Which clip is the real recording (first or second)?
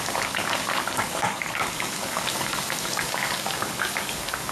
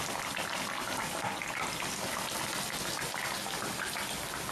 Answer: second